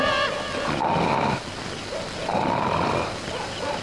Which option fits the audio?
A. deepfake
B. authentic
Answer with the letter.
B